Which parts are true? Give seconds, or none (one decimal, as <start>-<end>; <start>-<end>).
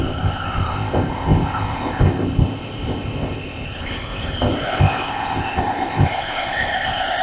none